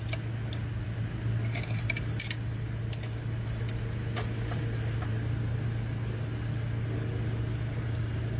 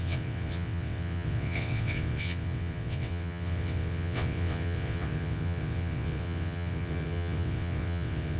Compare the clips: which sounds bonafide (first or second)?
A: first